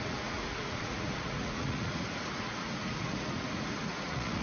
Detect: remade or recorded remade